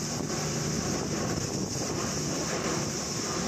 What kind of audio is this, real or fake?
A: real